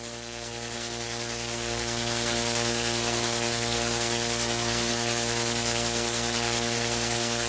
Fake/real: fake